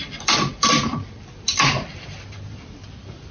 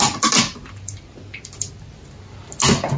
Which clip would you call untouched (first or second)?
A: second